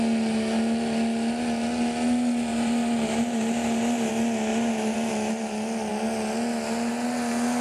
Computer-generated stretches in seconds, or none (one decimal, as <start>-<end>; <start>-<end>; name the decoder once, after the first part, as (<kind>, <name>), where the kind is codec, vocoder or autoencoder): 2.5-4.1 (vocoder, BigVGAN v2); 4.5-5.1